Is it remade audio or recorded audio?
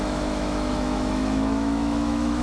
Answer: remade